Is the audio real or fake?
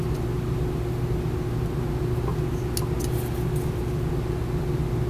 real